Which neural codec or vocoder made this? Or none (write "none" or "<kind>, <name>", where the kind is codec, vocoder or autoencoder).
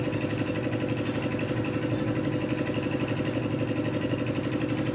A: none